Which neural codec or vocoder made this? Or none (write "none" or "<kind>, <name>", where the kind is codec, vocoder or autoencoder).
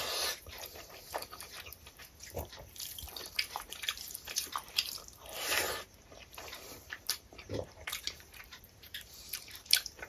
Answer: vocoder, BigVGAN v2